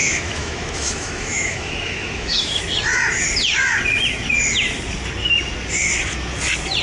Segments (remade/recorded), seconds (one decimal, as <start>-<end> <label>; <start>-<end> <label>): 0.0-2.6 remade; 2.6-6.8 recorded